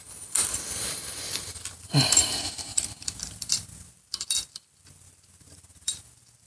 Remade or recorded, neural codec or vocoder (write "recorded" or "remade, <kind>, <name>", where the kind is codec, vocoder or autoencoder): remade, vocoder, BigVGAN v2